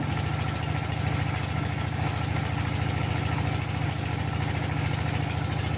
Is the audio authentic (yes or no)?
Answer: yes